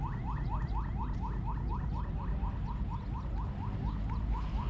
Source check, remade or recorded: recorded